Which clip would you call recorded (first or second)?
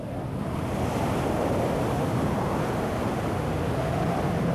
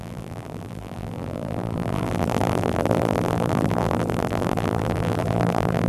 first